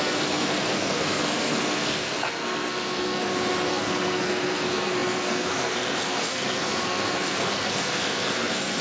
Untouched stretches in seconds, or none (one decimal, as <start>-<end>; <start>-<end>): 3.2-3.7